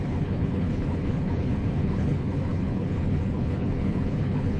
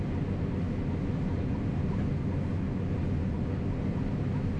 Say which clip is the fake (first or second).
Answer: first